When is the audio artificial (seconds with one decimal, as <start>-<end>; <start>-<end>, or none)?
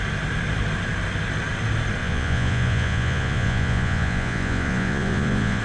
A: 2.0-5.6